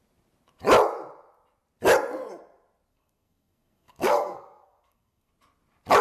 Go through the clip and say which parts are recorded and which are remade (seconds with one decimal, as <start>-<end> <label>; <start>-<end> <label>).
0.0-2.9 recorded; 2.9-5.3 remade; 5.3-6.0 recorded